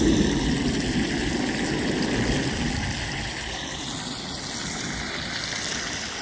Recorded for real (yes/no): yes